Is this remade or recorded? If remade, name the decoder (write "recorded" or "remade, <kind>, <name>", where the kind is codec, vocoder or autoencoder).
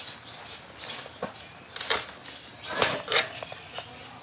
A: recorded